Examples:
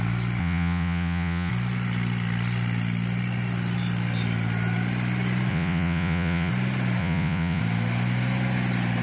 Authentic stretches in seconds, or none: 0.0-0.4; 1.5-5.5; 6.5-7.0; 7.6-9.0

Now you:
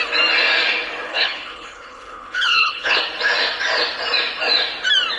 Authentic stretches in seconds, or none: 0.0-1.1; 3.0-5.2

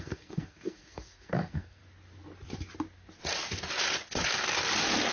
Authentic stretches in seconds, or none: 1.8-5.1

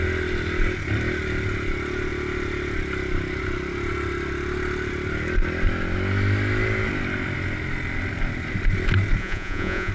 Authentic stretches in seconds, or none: 0.0-9.2

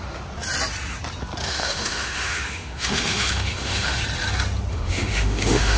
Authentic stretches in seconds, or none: 0.0-1.4; 4.0-4.7

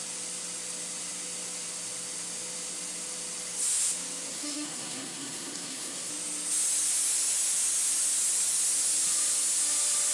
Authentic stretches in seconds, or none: 0.0-4.3; 6.1-10.1

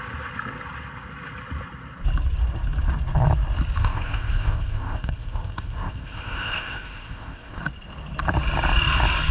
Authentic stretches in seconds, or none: 0.0-3.8; 7.6-9.3

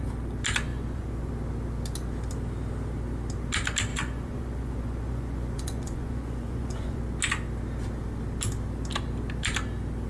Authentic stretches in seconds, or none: 0.0-0.7; 1.3-3.9; 7.0-10.1